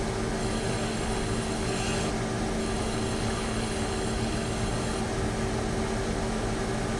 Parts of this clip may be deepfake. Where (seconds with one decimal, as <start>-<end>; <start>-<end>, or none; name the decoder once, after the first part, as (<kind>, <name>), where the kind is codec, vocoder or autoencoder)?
0.4-2.1 (codec, DAC); 2.6-5.0